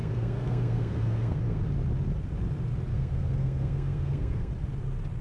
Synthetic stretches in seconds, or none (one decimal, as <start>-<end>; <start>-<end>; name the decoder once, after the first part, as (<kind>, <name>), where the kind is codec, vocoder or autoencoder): 0.0-1.6 (codec, SNAC); 2.9-4.5

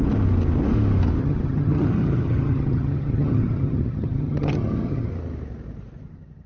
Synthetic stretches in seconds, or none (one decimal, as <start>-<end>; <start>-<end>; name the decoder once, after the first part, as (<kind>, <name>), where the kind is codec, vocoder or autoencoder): 1.2-5.1 (vocoder, HiFi-GAN)

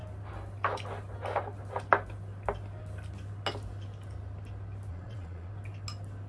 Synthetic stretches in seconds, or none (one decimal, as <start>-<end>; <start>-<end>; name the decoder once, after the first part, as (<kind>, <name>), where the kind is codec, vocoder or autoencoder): 4.9-5.5 (vocoder, Vocos)

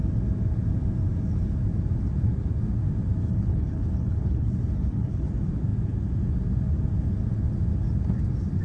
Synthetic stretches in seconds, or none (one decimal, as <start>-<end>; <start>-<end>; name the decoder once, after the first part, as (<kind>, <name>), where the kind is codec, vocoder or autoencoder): 3.2-5.3 (codec, HILCodec)